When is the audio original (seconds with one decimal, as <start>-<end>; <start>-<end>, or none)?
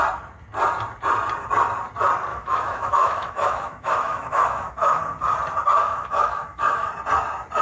0.0-2.3; 5.0-5.8; 6.9-7.6